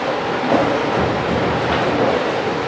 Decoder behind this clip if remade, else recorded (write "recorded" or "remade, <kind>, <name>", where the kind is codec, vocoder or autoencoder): recorded